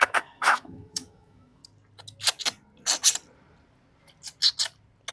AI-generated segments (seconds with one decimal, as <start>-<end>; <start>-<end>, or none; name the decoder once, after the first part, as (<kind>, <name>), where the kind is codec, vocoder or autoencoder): 0.0-1.6 (autoencoder, DAC-VAE)